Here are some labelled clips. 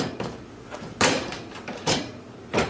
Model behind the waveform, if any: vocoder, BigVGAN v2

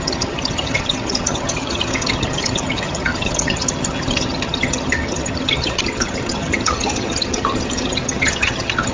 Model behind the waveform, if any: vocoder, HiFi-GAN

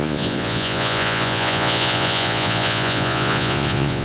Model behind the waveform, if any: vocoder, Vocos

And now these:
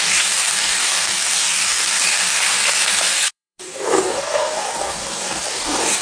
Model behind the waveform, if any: codec, DAC